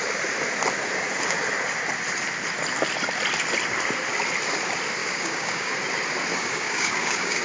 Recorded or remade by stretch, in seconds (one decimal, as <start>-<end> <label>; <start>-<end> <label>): 0.0-5.0 recorded; 5.0-5.7 remade; 5.7-6.3 recorded; 6.3-7.4 remade